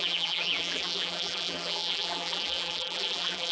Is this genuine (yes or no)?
no